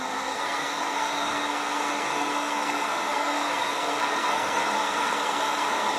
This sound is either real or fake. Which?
fake